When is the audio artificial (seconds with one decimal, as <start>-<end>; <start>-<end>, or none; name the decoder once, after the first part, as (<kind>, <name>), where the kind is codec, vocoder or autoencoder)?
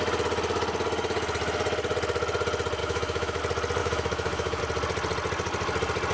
2.8-3.4 (autoencoder, DAC-VAE); 3.8-4.6